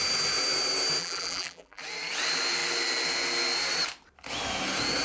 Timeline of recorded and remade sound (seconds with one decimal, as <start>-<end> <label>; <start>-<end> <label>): 0.0-1.0 recorded; 1.0-1.8 remade; 1.8-5.0 recorded